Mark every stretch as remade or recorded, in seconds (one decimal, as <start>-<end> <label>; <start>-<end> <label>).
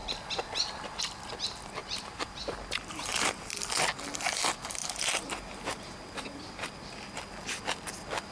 0.0-1.8 recorded; 1.8-3.4 remade; 3.4-4.8 recorded; 4.8-6.7 remade; 6.7-8.3 recorded